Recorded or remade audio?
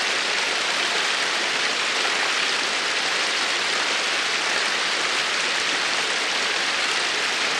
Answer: recorded